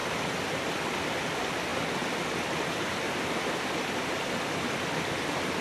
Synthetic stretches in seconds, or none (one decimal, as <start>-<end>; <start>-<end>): none